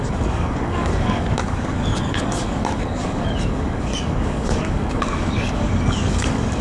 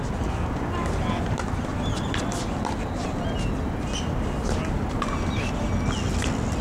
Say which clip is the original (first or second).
second